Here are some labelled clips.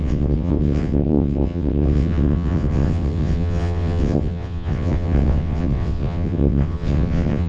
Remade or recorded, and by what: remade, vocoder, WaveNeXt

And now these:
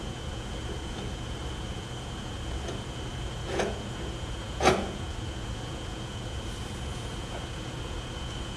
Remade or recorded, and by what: remade, vocoder, Vocos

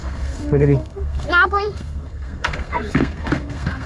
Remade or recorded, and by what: remade, codec, SNAC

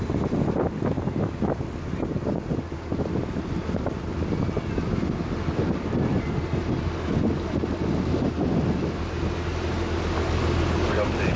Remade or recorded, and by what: recorded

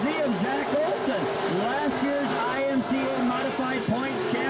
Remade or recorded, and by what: recorded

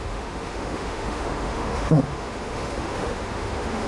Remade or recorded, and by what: remade, autoencoder, DAC-VAE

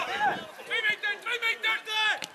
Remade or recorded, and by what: recorded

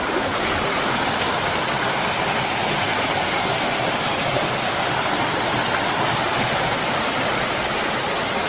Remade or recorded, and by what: recorded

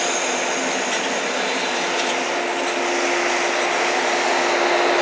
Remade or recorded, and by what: recorded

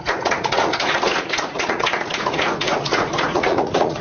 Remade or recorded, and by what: remade, vocoder, Vocos